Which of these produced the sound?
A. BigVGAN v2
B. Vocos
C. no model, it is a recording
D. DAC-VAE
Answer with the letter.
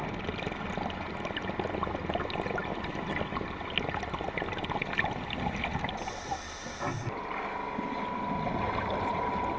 C